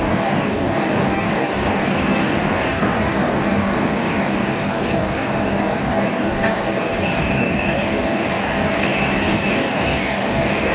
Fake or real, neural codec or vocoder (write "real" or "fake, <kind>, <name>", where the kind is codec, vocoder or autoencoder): fake, codec, DAC